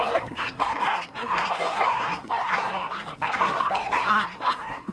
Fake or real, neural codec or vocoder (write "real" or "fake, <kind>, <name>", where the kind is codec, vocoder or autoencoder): fake, codec, SNAC